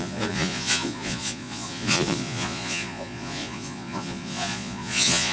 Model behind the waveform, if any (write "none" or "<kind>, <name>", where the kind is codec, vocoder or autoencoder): vocoder, Vocos